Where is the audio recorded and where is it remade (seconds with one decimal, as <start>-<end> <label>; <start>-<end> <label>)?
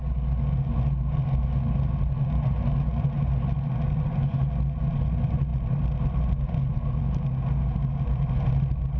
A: 0.0-9.0 recorded